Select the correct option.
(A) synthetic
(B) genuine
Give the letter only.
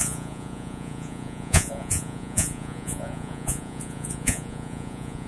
A